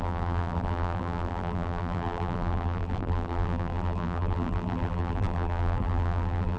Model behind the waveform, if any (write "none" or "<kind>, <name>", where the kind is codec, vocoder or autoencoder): vocoder, BigVGAN v2